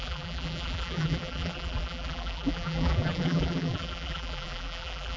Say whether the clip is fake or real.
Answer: fake